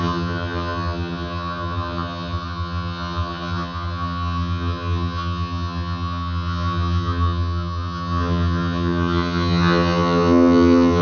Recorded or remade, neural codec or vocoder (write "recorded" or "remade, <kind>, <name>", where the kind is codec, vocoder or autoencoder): remade, vocoder, HiFi-GAN